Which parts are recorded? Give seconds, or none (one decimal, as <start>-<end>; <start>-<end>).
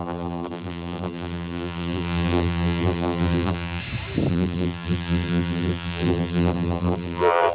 3.8-4.3